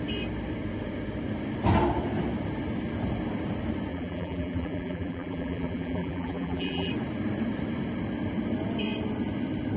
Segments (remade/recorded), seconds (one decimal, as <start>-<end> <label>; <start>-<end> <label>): 0.0-3.9 recorded; 3.9-6.9 remade; 6.9-9.8 recorded